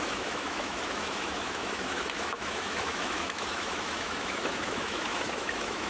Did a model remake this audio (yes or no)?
yes